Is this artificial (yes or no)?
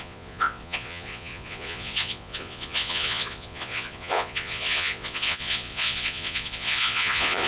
yes